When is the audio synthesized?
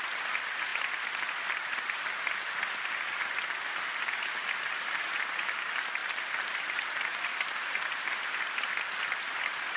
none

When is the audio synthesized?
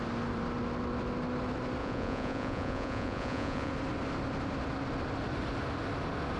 1.8-3.7 (vocoder, Vocos)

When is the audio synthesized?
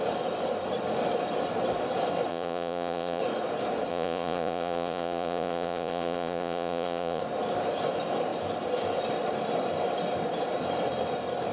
2.3-3.2 (vocoder, Vocos); 3.9-7.2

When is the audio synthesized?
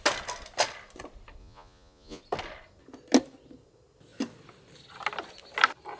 1.4-2.2 (vocoder, Vocos)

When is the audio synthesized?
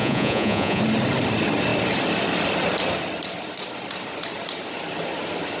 0.0-0.8 (vocoder, Vocos)